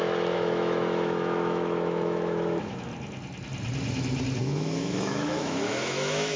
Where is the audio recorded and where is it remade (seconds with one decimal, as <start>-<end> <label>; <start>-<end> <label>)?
0.0-2.9 remade; 2.9-4.4 recorded; 4.4-6.4 remade